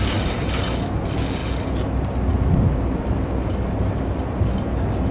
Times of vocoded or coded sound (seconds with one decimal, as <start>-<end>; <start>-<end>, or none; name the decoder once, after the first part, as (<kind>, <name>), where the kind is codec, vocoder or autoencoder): none